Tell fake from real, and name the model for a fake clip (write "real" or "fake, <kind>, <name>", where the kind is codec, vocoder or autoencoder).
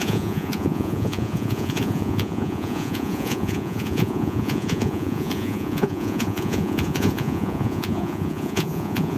fake, vocoder, Vocos